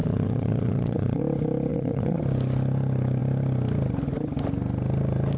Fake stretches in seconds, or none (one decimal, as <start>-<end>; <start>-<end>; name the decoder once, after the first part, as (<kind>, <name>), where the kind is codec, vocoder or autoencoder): 0.0-1.2 (vocoder, Vocos); 1.7-2.2